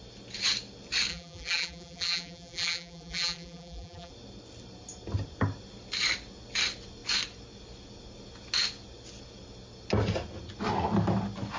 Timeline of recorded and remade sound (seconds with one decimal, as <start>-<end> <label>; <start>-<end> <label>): 0.0-1.1 recorded; 1.1-4.1 remade; 4.1-11.6 recorded